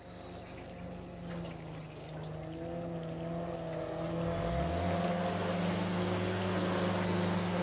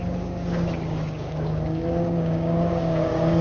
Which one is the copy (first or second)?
second